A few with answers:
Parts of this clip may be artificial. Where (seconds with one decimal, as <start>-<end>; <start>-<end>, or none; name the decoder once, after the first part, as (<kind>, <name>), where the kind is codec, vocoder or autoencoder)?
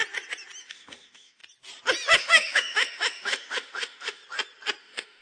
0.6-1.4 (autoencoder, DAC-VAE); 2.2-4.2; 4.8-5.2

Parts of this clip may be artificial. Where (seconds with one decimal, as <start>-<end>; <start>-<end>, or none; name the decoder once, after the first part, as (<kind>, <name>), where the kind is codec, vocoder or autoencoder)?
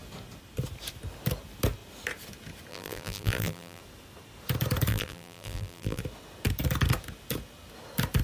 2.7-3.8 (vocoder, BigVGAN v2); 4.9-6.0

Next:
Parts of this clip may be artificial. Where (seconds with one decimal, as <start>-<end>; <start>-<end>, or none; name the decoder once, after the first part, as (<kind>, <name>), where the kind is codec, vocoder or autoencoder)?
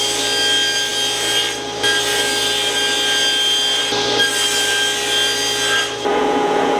6.1-6.8 (vocoder, Vocos)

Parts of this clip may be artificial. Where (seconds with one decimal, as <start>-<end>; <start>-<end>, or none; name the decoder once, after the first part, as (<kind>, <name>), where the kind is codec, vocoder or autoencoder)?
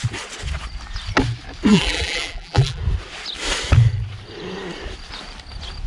1.7-2.8 (vocoder, BigVGAN v2)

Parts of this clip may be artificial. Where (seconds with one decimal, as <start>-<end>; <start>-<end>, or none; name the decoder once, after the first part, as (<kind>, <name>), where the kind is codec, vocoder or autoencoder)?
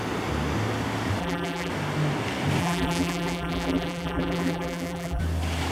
1.2-1.7 (vocoder, BigVGAN v2); 2.6-5.2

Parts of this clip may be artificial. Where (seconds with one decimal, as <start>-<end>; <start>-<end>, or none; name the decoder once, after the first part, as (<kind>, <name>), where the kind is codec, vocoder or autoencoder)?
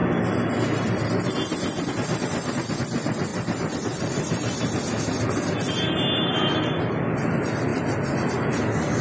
3.3-4.3 (vocoder, BigVGAN v2); 7.7-9.0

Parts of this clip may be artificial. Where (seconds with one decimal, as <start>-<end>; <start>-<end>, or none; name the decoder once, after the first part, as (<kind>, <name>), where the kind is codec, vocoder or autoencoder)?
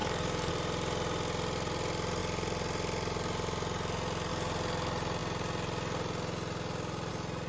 0.0-0.5 (codec, DAC)